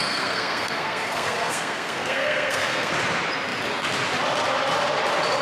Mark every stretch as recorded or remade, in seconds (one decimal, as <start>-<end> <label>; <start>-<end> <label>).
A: 0.0-2.9 remade; 2.9-5.4 recorded